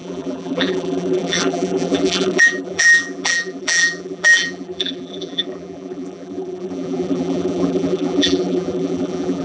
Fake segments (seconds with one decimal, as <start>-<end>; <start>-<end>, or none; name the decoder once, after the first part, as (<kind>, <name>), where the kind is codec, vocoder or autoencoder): 0.0-9.4 (vocoder, BigVGAN v2)